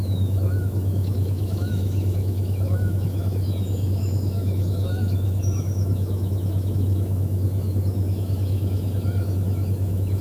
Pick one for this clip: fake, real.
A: fake